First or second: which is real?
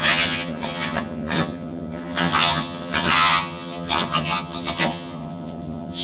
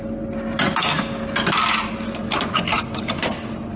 second